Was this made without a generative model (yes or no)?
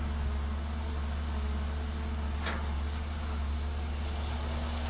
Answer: yes